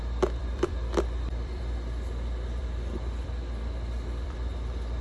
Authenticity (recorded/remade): remade